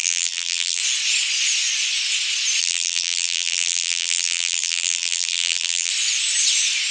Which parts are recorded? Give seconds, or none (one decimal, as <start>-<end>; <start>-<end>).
0.8-2.6; 5.9-6.9